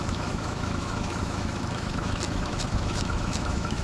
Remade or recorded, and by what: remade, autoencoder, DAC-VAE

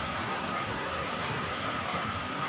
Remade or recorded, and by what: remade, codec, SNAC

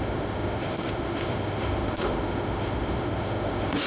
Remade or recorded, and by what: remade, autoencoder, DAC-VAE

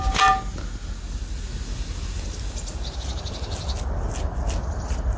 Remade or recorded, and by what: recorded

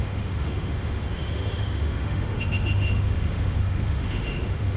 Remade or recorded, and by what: remade, autoencoder, DAC-VAE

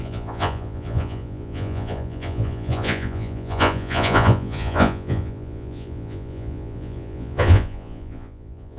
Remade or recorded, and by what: remade, vocoder, Vocos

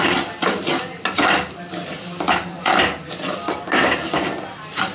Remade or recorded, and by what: recorded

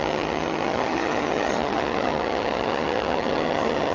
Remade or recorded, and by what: remade, vocoder, HiFi-GAN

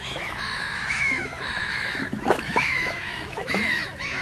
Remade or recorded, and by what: remade, autoencoder, DAC-VAE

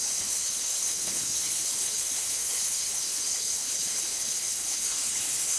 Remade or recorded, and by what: remade, codec, HILCodec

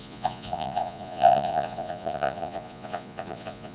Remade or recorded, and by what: remade, vocoder, Vocos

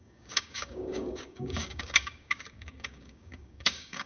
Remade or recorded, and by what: remade, codec, DAC